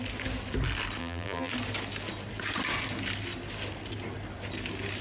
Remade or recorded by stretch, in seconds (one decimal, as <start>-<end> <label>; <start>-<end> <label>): 0.0-1.0 recorded; 1.0-1.5 remade; 1.5-5.0 recorded